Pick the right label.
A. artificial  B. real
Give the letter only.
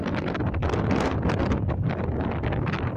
B